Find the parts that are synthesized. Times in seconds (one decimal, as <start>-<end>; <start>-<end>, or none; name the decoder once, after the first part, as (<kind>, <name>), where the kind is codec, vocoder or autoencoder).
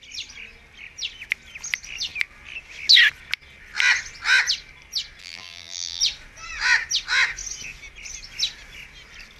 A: 5.2-6.0 (vocoder, BigVGAN v2)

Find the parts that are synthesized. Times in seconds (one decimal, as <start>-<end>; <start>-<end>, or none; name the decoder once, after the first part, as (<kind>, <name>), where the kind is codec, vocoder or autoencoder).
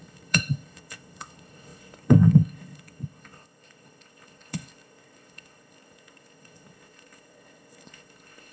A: 0.0-8.5 (codec, ZipCodec)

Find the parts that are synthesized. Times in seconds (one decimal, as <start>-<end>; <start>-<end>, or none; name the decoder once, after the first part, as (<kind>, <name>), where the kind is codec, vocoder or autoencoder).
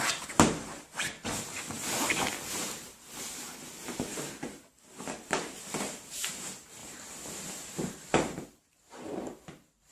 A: 0.0-1.2 (vocoder, BigVGAN v2); 2.8-4.1; 5.2-6.8; 7.5-9.9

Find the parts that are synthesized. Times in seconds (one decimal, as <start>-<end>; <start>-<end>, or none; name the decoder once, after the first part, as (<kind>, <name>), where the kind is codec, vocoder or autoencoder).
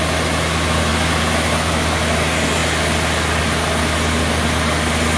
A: none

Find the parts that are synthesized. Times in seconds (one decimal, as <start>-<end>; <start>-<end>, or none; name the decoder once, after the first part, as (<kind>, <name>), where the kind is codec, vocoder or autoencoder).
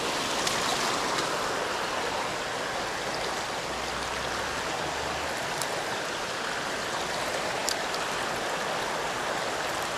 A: none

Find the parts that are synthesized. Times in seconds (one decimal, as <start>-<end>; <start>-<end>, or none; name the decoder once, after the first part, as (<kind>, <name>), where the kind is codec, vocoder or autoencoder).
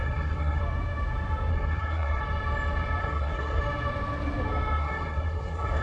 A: 0.0-0.6 (codec, SNAC); 1.5-2.2; 3.0-3.6; 4.8-5.8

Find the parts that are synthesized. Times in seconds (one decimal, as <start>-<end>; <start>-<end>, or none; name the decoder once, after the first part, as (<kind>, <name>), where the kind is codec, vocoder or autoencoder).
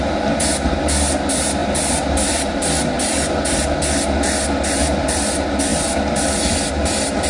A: 1.6-3.5 (vocoder, BigVGAN v2); 5.7-7.3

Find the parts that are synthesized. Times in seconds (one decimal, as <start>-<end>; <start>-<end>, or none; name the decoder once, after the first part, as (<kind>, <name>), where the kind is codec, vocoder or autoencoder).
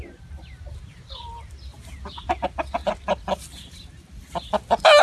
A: none